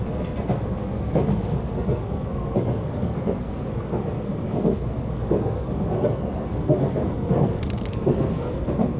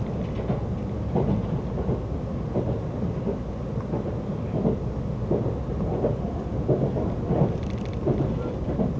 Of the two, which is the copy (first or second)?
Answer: first